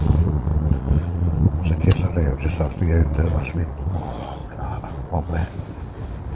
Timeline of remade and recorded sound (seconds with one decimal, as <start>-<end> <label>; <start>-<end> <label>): 0.0-4.4 remade; 4.4-4.9 recorded; 4.9-5.4 remade; 5.4-6.3 recorded